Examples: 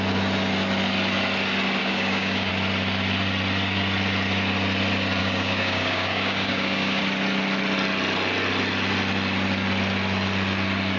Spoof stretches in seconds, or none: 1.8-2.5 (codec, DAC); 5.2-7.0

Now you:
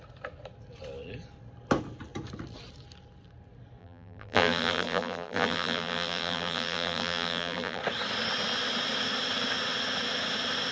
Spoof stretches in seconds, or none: 3.8-7.8 (vocoder, BigVGAN v2)

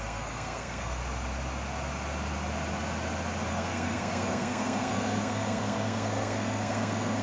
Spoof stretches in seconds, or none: 0.0-1.0 (codec, SNAC); 3.5-7.2

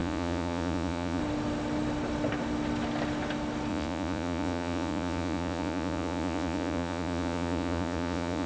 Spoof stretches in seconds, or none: 0.0-1.2 (vocoder, Vocos); 3.7-8.5

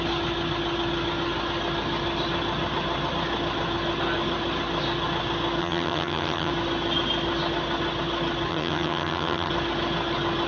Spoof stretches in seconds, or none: 5.6-6.5 (vocoder, HiFi-GAN); 8.5-9.5

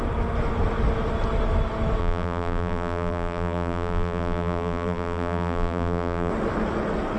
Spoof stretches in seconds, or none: 2.0-6.3 (vocoder, BigVGAN v2)

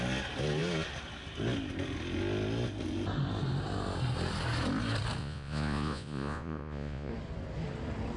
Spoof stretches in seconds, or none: 5.2-7.1 (vocoder, Vocos)

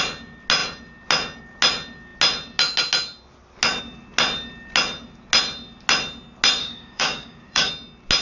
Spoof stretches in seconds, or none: 6.6-7.7 (codec, DAC)